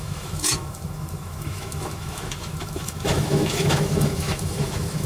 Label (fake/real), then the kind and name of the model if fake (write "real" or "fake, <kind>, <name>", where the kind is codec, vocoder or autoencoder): fake, autoencoder, DAC-VAE